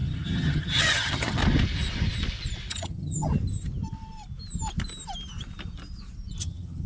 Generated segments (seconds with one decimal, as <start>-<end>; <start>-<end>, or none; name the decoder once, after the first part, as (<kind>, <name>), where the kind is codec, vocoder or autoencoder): 0.0-1.4 (vocoder, HiFi-GAN); 2.7-3.3; 6.4-6.9

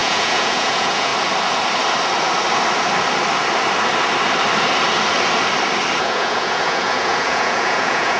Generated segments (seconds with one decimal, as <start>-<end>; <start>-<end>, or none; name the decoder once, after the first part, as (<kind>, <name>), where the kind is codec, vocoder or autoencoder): 0.0-1.1 (vocoder, Vocos); 6.0-8.2

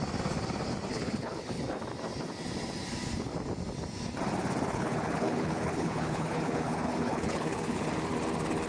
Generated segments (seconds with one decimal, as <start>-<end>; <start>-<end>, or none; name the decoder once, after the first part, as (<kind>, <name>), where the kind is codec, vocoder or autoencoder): 0.9-1.6 (codec, HILCodec); 4.7-7.9

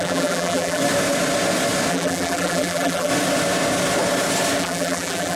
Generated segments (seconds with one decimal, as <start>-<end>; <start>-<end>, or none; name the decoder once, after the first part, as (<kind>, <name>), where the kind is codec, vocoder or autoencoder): 0.0-0.8 (vocoder, BigVGAN v2); 1.9-3.1; 4.6-5.4

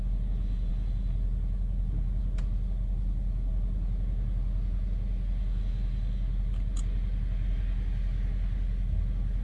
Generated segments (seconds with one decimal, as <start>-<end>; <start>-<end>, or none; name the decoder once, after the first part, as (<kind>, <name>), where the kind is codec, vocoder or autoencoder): none

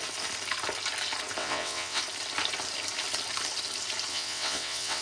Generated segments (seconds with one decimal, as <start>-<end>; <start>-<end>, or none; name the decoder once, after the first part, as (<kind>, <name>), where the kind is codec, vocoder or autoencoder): 1.4-2.0 (vocoder, WaveNeXt); 4.1-5.0

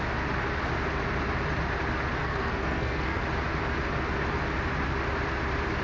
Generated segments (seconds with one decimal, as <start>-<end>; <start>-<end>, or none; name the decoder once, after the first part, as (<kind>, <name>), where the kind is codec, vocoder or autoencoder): 2.2-3.2 (codec, SNAC)